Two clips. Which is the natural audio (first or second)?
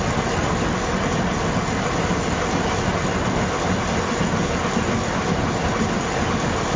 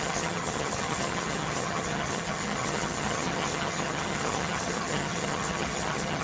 first